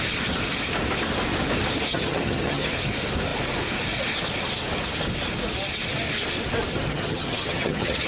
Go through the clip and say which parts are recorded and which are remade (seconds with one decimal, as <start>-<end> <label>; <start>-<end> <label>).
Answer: 0.0-1.9 recorded; 1.9-2.7 remade; 2.7-6.9 recorded; 6.9-8.1 remade